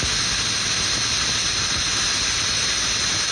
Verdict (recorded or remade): recorded